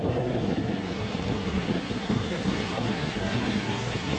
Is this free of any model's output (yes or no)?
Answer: no